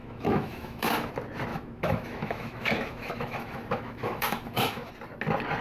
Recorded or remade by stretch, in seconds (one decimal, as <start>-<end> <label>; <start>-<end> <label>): 0.0-1.1 remade; 1.1-1.5 recorded; 1.5-4.9 remade; 4.9-5.6 recorded